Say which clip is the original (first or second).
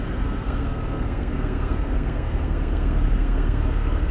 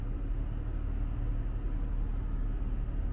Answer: second